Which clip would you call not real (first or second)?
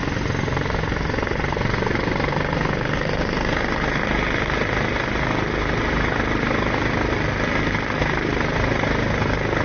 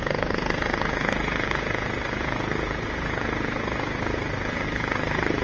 second